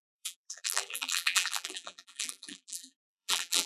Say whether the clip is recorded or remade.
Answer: remade